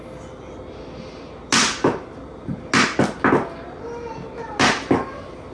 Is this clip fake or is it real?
real